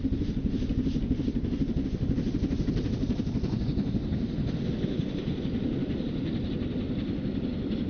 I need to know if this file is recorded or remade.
recorded